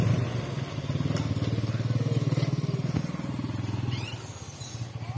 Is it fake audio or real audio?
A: real